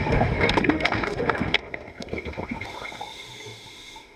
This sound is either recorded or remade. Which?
remade